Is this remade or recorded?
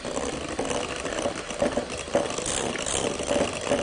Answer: recorded